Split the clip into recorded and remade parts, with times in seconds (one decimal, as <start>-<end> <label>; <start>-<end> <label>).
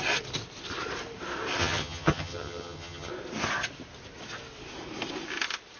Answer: 0.0-1.6 recorded; 1.6-3.1 remade; 3.1-5.8 recorded